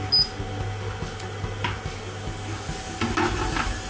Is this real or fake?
real